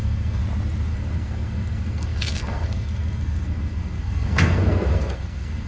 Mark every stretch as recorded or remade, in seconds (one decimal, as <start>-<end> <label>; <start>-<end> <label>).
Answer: 0.0-0.4 remade; 0.4-0.9 recorded; 0.9-5.7 remade